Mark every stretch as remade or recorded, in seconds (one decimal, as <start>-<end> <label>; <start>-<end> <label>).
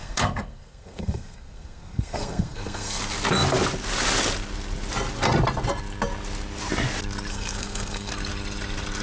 0.0-3.0 remade; 3.0-7.3 recorded; 7.3-8.1 remade; 8.1-9.0 recorded